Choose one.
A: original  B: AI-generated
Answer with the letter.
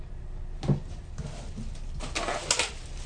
A